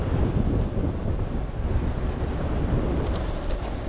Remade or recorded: recorded